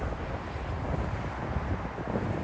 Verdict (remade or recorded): recorded